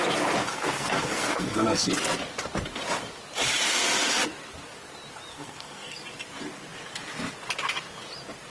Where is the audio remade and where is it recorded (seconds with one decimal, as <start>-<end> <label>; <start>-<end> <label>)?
0.0-0.4 recorded; 0.4-1.9 remade; 1.9-5.3 recorded; 5.3-6.0 remade; 6.0-8.5 recorded